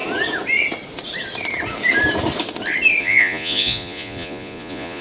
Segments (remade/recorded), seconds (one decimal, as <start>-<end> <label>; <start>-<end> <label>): 0.0-3.0 recorded; 3.0-5.0 remade